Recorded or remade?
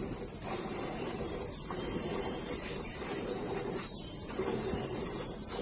remade